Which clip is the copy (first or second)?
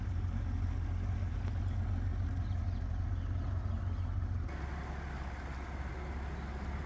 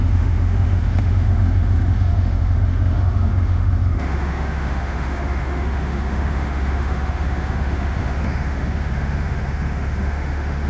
second